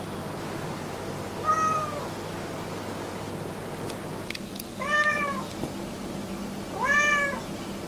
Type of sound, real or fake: real